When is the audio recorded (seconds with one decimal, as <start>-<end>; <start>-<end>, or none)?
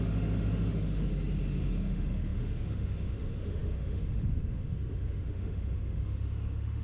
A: 1.1-1.6